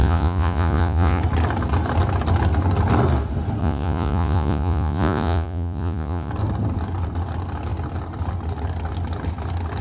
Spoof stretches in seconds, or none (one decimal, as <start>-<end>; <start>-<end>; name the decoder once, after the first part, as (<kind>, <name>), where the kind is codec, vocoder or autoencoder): 0.0-1.2 (vocoder, Vocos); 3.6-6.3